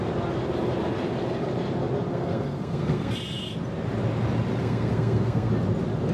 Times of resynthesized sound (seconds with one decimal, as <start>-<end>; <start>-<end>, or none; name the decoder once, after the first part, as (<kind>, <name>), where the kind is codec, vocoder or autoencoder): 2.1-3.1 (codec, SNAC); 4.6-5.5